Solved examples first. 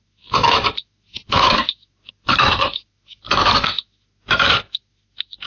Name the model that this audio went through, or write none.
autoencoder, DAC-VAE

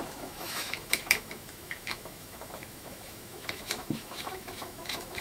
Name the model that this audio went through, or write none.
autoencoder, DAC-VAE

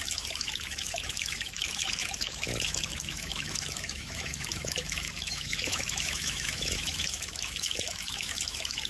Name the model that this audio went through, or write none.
autoencoder, DAC-VAE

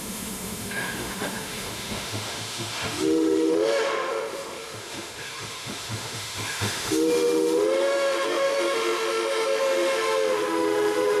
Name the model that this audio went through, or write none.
autoencoder, DAC-VAE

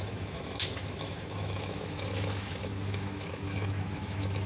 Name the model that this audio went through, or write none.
autoencoder, DAC-VAE